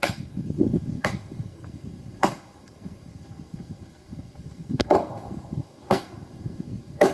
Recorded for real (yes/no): no